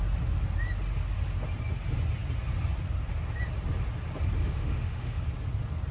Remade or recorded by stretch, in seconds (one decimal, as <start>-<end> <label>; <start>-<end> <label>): 0.0-4.4 recorded; 4.4-5.2 remade; 5.2-5.9 recorded